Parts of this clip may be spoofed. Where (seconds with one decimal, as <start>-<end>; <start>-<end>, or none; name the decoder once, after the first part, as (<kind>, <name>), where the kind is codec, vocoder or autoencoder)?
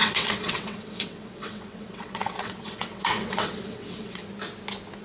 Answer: 0.0-4.2 (vocoder, WaveNeXt)